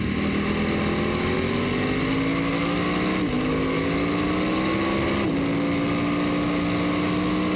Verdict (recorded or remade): recorded